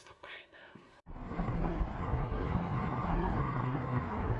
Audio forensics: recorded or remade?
remade